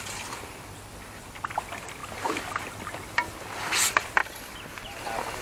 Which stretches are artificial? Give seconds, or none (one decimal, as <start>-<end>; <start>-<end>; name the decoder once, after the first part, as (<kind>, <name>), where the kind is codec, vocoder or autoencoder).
0.0-3.2 (vocoder, BigVGAN v2); 3.8-4.2; 5.0-5.4